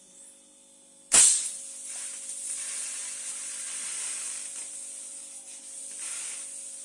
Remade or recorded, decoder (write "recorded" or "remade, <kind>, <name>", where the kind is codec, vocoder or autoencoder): recorded